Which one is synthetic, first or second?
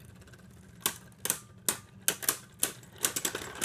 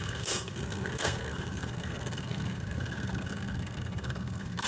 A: second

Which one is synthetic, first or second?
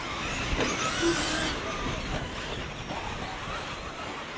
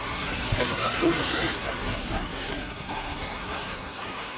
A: second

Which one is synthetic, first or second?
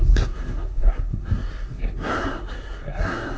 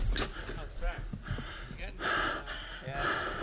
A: first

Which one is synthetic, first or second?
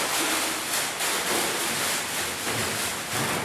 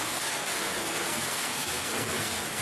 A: second